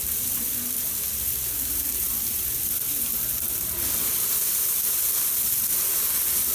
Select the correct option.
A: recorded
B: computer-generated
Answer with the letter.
B